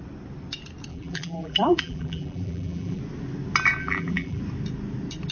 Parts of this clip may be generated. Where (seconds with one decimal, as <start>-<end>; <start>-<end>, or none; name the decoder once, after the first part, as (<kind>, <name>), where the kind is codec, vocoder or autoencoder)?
0.9-3.0 (vocoder, BigVGAN v2); 3.8-4.4